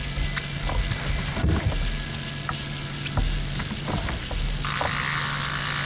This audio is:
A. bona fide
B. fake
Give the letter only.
A